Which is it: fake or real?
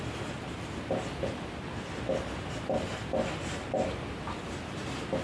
real